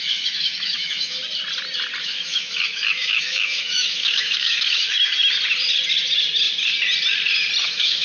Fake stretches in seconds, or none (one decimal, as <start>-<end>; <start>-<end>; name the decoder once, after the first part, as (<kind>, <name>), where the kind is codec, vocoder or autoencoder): 0.0-1.2 (autoencoder, DAC-VAE); 2.0-5.2; 7.6-8.0